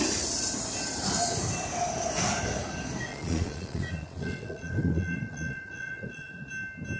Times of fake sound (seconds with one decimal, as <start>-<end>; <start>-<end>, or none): 3.1-6.5

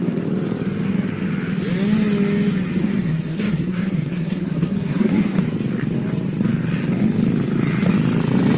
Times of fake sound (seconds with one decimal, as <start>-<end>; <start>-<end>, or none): 2.8-5.4

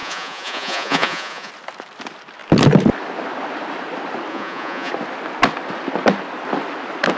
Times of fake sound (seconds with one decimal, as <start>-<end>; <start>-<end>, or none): 0.0-1.5; 4.3-4.9

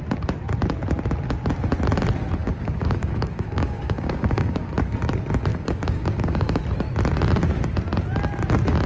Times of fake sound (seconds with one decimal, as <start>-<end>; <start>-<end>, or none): 2.4-4.7; 5.5-6.6

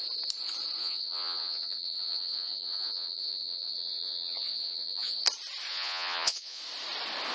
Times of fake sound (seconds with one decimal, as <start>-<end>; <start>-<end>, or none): 0.8-5.2; 5.7-6.6

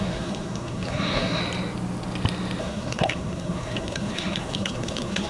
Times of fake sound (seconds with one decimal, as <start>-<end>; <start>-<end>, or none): 0.0-1.4; 2.6-5.3

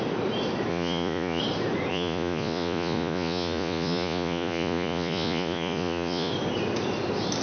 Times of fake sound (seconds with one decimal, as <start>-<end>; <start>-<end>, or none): 0.7-1.4; 1.9-6.3

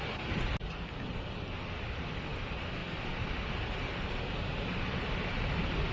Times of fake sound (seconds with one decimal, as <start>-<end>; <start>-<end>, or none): none